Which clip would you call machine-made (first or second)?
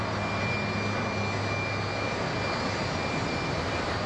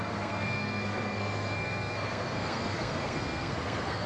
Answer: second